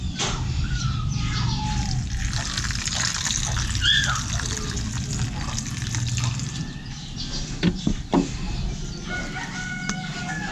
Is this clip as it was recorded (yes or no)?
yes